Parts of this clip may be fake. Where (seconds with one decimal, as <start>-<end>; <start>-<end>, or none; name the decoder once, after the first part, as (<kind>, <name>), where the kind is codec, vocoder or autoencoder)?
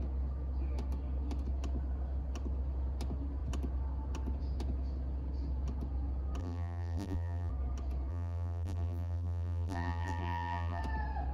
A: 6.4-7.5 (vocoder, BigVGAN v2); 8.1-10.8